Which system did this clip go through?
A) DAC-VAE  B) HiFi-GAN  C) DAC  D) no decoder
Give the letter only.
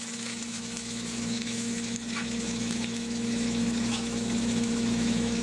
A